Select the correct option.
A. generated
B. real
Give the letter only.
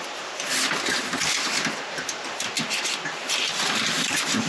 B